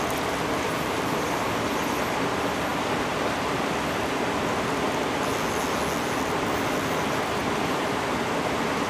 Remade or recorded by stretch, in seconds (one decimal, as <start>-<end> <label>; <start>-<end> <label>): 0.0-8.9 recorded